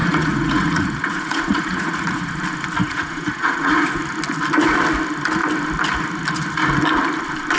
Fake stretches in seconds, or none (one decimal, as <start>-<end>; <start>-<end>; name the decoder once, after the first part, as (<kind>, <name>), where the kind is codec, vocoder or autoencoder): 0.0-2.3 (vocoder, Vocos); 2.8-4.0